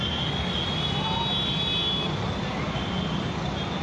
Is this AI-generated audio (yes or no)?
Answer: no